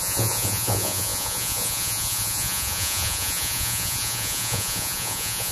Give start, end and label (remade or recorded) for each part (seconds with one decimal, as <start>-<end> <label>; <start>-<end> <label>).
0.0-5.5 remade